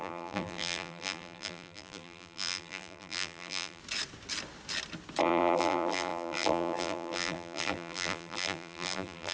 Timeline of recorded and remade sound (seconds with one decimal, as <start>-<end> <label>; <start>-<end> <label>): 0.0-3.8 remade; 3.8-5.2 recorded; 5.2-9.3 remade